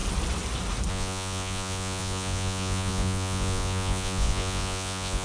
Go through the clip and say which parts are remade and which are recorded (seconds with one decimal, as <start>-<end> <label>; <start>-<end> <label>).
0.0-0.9 recorded; 0.9-5.2 remade